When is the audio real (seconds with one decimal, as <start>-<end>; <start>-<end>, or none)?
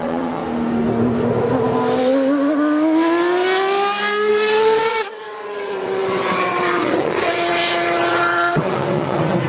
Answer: 0.4-4.3